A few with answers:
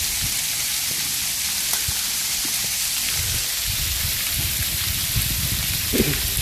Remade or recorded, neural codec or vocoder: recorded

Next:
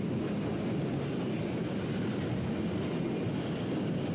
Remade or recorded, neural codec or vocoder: recorded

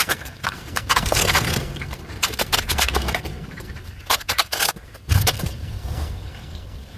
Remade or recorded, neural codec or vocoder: remade, codec, SNAC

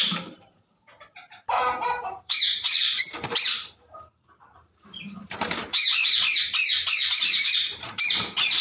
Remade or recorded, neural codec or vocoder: remade, vocoder, BigVGAN v2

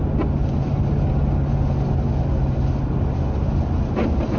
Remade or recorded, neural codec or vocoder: recorded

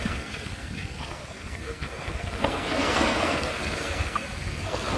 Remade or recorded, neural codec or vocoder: remade, codec, SNAC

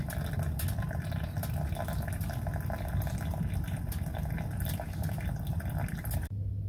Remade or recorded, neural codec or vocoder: recorded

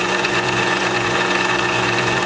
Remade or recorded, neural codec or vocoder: remade, vocoder, Vocos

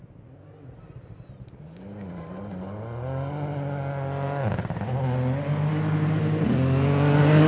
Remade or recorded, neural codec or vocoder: recorded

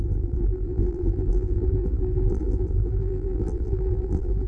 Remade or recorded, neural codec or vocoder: remade, vocoder, BigVGAN v2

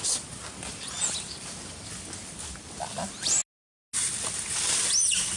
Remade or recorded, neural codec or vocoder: recorded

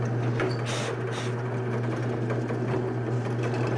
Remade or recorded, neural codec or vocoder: recorded